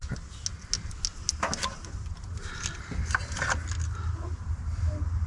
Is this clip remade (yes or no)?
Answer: no